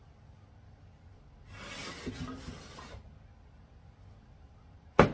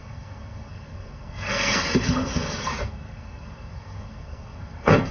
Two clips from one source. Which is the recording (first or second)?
first